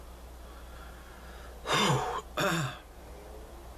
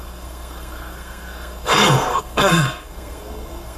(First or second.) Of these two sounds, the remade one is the second